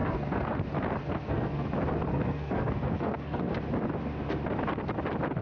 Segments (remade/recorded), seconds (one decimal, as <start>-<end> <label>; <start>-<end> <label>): 0.0-0.6 remade; 0.6-1.0 recorded; 1.0-1.7 remade; 1.7-2.1 recorded; 2.1-3.5 remade; 3.5-5.4 recorded